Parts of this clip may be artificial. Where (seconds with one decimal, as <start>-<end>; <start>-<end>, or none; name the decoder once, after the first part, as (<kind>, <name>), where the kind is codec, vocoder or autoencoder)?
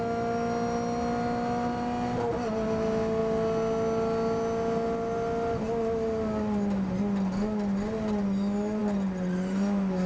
none